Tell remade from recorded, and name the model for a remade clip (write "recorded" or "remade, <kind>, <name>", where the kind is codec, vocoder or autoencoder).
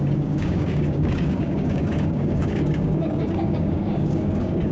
remade, codec, DAC